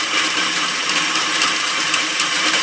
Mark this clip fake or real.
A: fake